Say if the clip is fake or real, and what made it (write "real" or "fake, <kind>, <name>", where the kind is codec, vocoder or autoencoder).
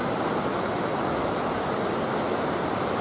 real